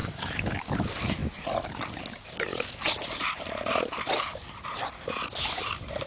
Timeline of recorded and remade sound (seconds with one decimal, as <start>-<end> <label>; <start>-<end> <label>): 0.0-0.7 remade; 0.7-6.1 recorded